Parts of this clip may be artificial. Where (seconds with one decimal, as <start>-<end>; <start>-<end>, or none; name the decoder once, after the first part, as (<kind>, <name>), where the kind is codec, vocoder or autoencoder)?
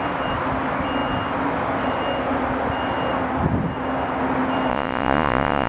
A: 4.7-5.7 (vocoder, Vocos)